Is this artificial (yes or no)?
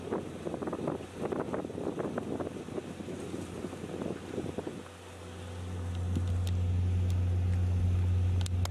no